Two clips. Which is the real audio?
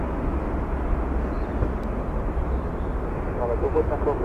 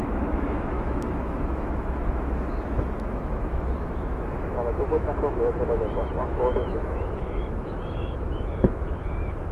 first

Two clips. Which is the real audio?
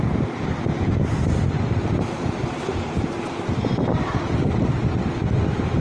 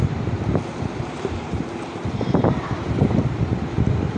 first